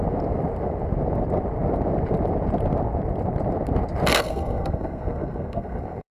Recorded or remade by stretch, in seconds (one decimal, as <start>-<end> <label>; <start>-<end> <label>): 0.0-4.1 recorded; 4.1-6.1 remade